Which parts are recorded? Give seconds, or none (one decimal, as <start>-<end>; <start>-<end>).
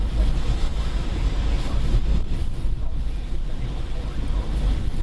0.0-5.0